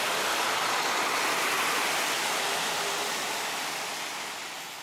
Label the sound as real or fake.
real